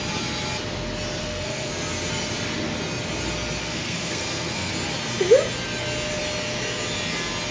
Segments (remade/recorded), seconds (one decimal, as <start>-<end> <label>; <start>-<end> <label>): 0.0-1.2 recorded; 1.2-1.7 remade; 1.7-3.6 recorded; 3.6-4.7 remade; 4.7-7.5 recorded